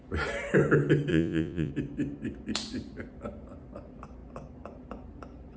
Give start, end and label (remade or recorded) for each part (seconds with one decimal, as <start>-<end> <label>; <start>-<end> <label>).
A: 0.0-1.1 recorded; 1.1-1.7 remade; 1.7-5.6 recorded